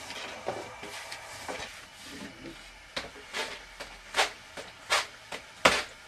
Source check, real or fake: real